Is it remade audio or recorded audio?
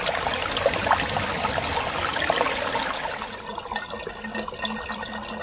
recorded